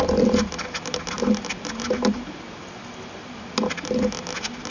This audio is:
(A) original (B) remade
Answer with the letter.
A